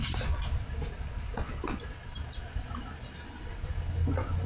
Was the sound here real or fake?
real